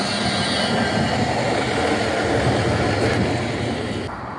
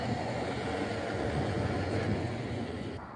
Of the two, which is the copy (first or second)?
second